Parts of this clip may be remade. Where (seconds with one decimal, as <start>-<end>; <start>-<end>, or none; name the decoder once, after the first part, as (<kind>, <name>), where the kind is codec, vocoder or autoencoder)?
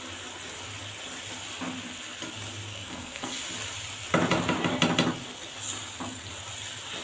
2.7-3.4 (codec, SNAC)